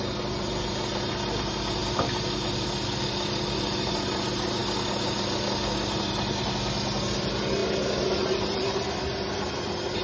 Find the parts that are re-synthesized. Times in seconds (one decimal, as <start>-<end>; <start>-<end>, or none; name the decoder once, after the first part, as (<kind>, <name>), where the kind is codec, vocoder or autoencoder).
none